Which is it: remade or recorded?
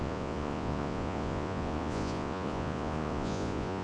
remade